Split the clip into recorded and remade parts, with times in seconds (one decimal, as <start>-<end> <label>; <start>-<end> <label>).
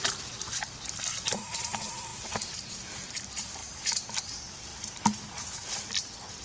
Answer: 0.0-2.1 remade; 2.1-2.7 recorded; 2.7-4.7 remade; 4.7-5.7 recorded; 5.7-6.4 remade